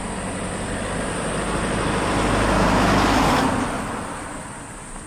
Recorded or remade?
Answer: recorded